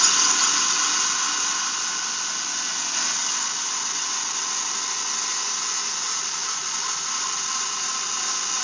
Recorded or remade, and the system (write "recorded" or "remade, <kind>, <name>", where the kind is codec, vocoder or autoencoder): recorded